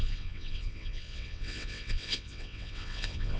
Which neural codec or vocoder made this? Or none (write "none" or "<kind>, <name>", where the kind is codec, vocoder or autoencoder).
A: vocoder, WaveNeXt